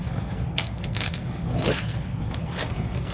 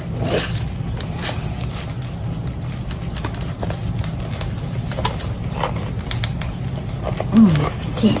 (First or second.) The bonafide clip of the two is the second